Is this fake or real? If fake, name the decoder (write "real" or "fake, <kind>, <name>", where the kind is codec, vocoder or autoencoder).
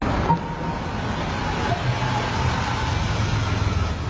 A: real